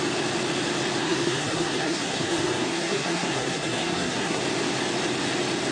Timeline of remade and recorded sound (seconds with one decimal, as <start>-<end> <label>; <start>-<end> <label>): 0.0-1.0 recorded; 1.0-4.4 remade; 4.4-5.7 recorded